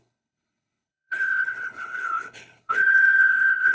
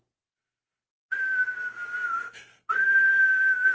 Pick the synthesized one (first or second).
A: first